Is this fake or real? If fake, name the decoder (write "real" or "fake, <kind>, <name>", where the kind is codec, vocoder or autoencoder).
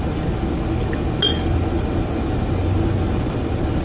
real